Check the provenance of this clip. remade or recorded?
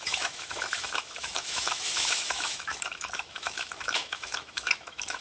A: remade